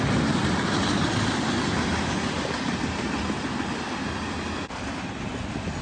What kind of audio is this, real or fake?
real